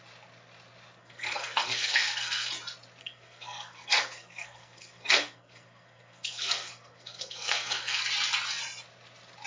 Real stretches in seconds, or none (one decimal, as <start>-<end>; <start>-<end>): 0.0-1.0; 2.5-3.0; 8.0-9.5